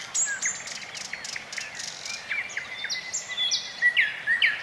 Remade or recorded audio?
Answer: recorded